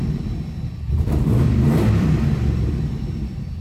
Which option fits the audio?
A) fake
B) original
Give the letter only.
A